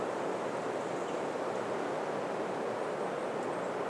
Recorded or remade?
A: recorded